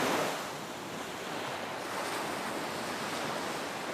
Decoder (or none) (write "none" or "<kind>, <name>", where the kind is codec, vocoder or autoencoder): none